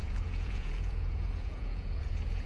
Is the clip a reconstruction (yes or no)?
yes